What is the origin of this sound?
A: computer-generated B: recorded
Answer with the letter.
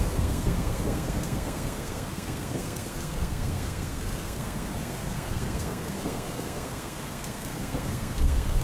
A